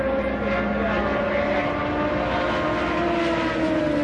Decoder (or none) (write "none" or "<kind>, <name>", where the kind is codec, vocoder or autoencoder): none